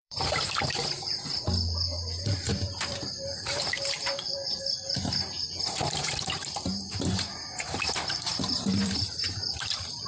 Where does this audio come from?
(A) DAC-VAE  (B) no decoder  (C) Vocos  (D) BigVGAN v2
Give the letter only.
D